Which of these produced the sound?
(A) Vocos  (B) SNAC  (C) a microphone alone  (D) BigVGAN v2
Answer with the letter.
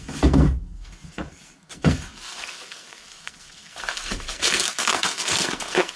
B